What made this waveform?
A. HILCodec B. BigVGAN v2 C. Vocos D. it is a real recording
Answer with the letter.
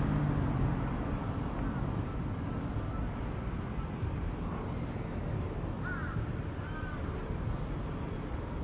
D